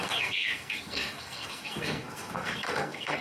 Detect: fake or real fake